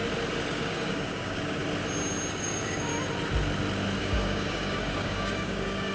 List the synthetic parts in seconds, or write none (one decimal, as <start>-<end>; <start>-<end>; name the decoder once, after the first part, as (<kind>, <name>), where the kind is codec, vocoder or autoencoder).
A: 0.5-1.6 (codec, DAC); 2.3-2.9; 4.0-5.9